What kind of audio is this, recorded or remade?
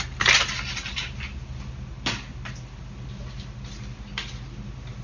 recorded